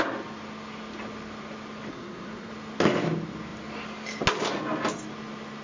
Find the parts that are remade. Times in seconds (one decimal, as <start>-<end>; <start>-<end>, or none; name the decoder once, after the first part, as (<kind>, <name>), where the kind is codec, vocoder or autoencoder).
1.9-2.5 (codec, SNAC)